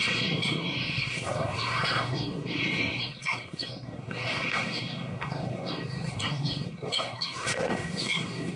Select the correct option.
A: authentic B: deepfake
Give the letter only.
B